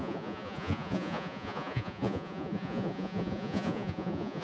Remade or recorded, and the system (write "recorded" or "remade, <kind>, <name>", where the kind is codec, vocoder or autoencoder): remade, vocoder, Vocos